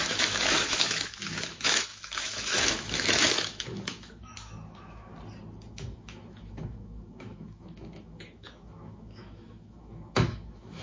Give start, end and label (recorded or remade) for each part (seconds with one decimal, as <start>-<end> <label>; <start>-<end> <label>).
0.0-5.1 remade; 5.1-5.7 recorded; 5.7-10.8 remade